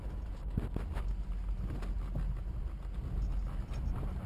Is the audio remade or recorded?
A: recorded